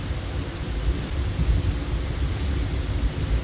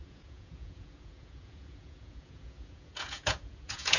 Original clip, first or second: first